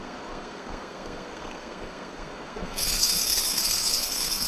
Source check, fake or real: fake